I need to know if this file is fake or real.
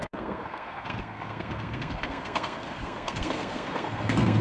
fake